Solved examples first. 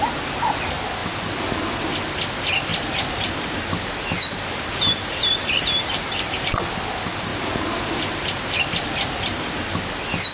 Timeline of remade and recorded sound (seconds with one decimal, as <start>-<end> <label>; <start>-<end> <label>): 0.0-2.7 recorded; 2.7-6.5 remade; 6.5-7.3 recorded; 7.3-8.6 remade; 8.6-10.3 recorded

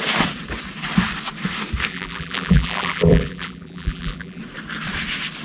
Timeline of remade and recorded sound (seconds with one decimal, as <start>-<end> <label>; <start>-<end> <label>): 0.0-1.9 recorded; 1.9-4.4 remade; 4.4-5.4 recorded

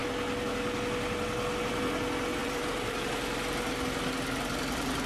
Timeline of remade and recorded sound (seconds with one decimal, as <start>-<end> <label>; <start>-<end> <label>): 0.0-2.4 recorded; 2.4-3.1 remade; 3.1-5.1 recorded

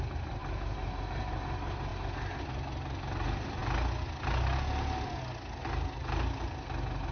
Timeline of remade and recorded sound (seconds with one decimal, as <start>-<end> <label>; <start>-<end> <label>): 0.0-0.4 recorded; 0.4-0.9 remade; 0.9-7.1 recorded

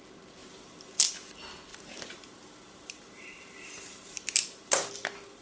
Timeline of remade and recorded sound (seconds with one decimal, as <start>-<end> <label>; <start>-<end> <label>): 0.0-0.4 recorded; 0.4-1.1 remade; 1.1-1.7 recorded; 1.7-4.9 remade; 4.9-5.4 recorded

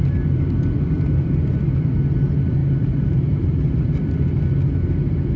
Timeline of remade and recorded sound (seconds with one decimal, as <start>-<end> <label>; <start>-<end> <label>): 0.0-2.6 recorded; 2.6-4.4 remade; 4.4-5.4 recorded

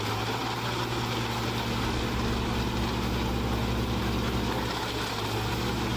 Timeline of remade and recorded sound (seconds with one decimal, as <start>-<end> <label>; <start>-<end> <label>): 0.0-6.0 recorded